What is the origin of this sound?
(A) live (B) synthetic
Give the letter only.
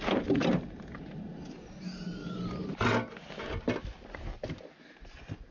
A